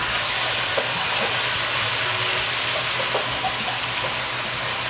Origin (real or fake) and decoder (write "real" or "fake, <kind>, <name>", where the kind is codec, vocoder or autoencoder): real